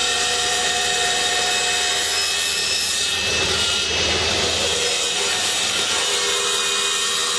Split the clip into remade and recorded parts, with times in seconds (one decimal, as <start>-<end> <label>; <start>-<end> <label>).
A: 0.0-1.5 remade; 1.5-2.6 recorded; 2.6-4.1 remade; 4.1-7.4 recorded

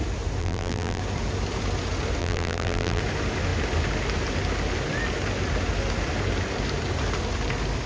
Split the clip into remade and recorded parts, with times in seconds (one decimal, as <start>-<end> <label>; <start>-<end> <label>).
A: 0.0-0.4 recorded; 0.4-1.0 remade; 1.0-2.2 recorded; 2.2-3.0 remade; 3.0-7.9 recorded

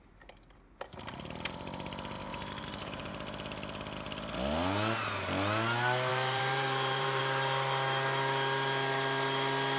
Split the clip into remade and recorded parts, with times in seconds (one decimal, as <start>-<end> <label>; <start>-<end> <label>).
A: 0.0-2.3 recorded; 2.3-3.1 remade; 3.1-6.1 recorded; 6.1-7.2 remade; 7.2-9.8 recorded

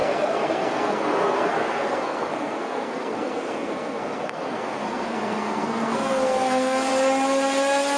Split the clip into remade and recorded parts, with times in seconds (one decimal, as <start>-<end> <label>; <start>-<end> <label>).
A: 0.0-6.9 remade; 6.9-8.0 recorded

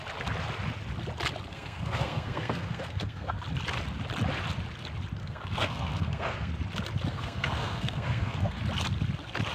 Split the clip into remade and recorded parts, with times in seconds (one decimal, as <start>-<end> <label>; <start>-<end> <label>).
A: 0.0-1.5 recorded; 1.5-3.4 remade; 3.4-5.2 recorded; 5.2-6.5 remade; 6.5-7.1 recorded; 7.1-8.6 remade; 8.6-9.5 recorded

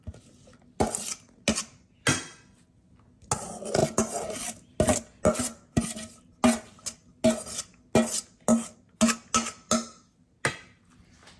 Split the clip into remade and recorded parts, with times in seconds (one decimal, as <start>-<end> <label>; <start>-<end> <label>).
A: 0.0-11.4 recorded

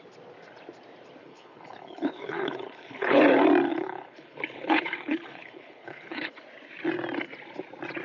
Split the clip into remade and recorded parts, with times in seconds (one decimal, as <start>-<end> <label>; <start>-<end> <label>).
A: 0.0-1.2 recorded; 1.2-3.2 remade; 3.2-3.7 recorded; 3.7-6.3 remade; 6.3-8.0 recorded

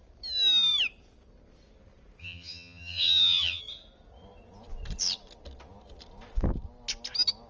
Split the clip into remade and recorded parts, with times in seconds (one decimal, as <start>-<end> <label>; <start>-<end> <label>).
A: 0.0-2.2 recorded; 2.2-3.6 remade; 3.6-7.5 recorded